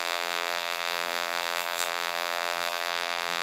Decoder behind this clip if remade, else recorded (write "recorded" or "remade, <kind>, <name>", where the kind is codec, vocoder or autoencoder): remade, vocoder, BigVGAN v2